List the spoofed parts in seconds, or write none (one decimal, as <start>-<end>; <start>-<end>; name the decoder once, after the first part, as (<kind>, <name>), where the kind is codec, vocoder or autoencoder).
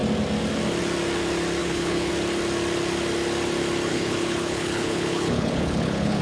1.6-2.1 (codec, HILCodec); 3.9-6.2